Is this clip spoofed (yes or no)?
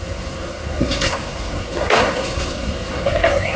yes